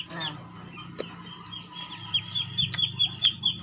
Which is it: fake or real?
real